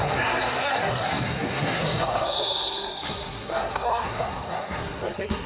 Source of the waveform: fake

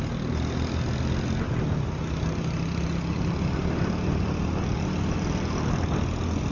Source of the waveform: real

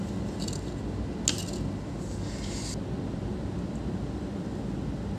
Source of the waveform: real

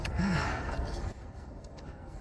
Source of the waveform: fake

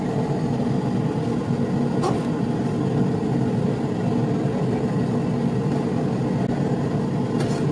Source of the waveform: real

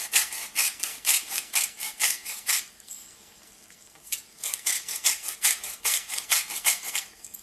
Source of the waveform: fake